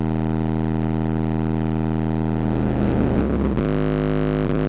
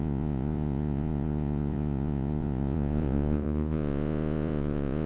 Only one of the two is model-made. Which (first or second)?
second